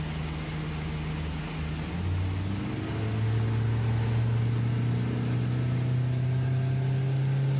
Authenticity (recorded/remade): recorded